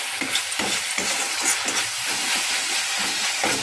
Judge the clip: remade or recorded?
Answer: recorded